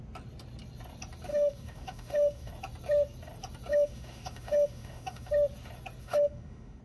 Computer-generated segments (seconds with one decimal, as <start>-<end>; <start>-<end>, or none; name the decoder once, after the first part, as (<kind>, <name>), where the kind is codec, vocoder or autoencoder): 1.3-2.5 (autoencoder, DAC-VAE); 3.7-5.3; 6.0-6.8